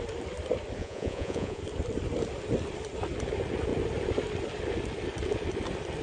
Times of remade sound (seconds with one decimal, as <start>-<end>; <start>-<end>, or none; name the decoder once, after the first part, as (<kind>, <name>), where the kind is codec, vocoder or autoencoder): 0.8-1.6 (vocoder, Vocos)